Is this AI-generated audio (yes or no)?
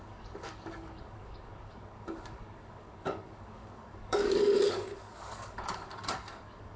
yes